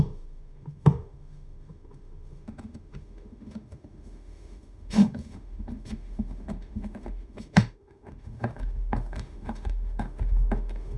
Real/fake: fake